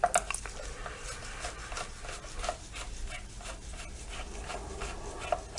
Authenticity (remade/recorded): recorded